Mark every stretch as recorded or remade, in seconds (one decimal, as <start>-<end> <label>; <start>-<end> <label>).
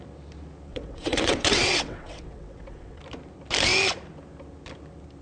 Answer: 0.0-0.7 recorded; 0.7-3.0 remade; 3.0-5.2 recorded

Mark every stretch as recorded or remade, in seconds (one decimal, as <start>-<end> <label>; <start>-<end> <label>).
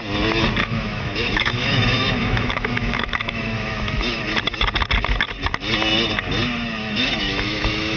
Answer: 0.0-0.6 recorded; 0.6-4.3 remade; 4.3-6.8 recorded; 6.8-8.0 remade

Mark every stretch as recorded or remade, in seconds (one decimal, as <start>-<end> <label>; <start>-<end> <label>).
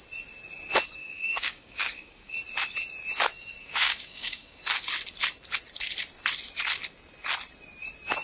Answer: 0.0-1.0 recorded; 1.0-2.3 remade; 2.3-3.6 recorded; 3.6-4.6 remade; 4.6-8.2 recorded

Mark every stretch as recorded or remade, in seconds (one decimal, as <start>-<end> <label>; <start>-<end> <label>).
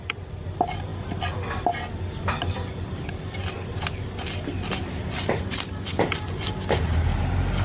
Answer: 0.0-7.6 recorded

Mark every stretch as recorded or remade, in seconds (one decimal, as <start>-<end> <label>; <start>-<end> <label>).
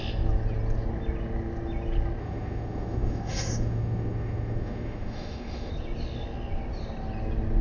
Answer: 0.0-2.2 recorded; 2.2-5.7 remade; 5.7-7.6 recorded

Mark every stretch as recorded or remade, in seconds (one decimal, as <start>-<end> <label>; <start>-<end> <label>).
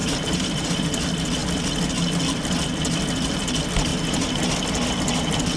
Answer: 0.0-0.7 remade; 0.7-3.9 recorded; 3.9-4.4 remade; 4.4-5.6 recorded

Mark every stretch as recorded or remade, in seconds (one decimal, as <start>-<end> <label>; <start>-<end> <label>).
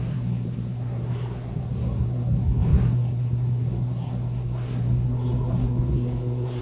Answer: 0.0-6.6 remade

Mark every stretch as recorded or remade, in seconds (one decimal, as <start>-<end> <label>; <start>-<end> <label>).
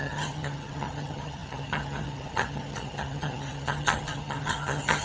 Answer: 0.0-5.0 remade